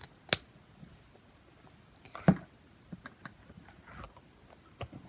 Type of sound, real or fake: real